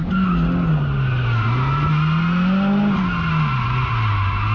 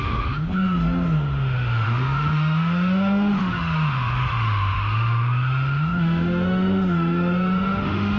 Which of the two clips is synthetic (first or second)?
second